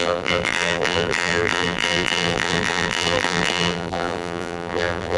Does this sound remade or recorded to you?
remade